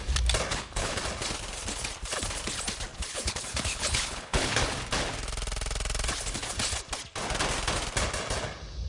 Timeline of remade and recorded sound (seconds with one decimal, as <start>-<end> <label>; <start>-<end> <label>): 0.0-0.5 recorded; 0.5-1.0 remade; 1.0-2.9 recorded; 2.9-4.6 remade; 4.6-8.9 recorded